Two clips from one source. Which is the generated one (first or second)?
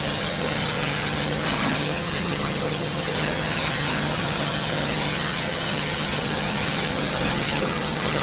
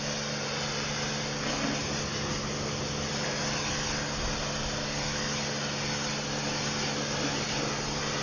first